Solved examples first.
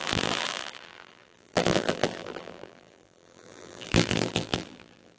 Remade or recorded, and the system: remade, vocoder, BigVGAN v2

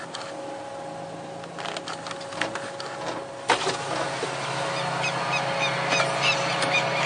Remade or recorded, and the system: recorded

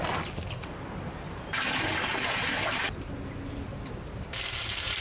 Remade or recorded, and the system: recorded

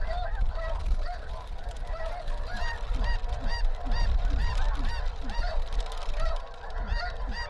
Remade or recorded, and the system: recorded